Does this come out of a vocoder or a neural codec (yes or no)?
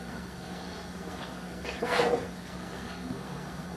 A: yes